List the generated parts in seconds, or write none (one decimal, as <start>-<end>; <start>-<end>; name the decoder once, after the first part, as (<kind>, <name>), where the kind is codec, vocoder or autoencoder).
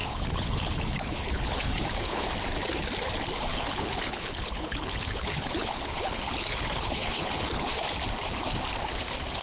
0.0-2.3 (codec, HILCodec); 3.5-7.7